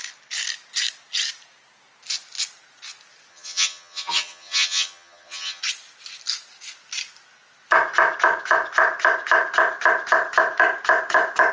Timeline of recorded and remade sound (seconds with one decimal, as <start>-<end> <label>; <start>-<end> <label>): 0.0-3.3 recorded; 3.3-5.6 remade; 5.6-11.5 recorded